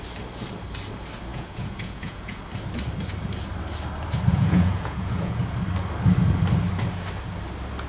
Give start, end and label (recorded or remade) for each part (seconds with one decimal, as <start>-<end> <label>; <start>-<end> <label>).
0.0-1.3 recorded; 1.3-2.4 remade; 2.4-4.3 recorded; 4.3-5.4 remade; 5.4-7.9 recorded